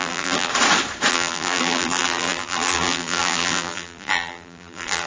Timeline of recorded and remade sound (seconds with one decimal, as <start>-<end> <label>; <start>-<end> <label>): 0.0-0.5 remade; 0.5-1.1 recorded; 1.1-5.1 remade